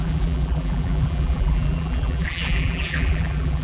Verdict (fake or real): fake